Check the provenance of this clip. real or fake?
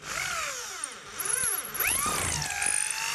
real